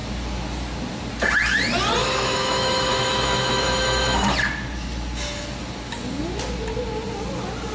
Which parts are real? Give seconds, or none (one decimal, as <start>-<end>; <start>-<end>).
0.0-2.0; 4.3-7.7

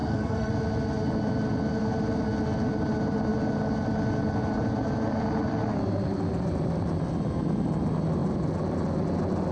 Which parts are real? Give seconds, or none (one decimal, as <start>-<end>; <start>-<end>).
0.5-9.5

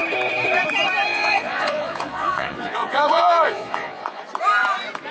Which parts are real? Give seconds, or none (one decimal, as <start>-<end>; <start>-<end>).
0.0-1.1; 4.2-5.1

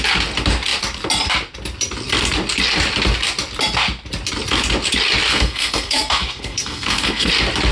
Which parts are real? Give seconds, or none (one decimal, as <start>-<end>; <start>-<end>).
0.0-5.3; 7.3-7.7

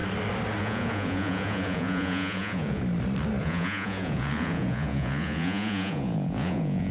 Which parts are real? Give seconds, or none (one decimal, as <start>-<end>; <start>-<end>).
0.0-0.6; 2.8-3.4

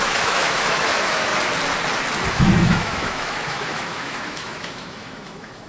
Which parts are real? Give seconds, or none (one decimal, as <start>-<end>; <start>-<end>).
1.3-2.3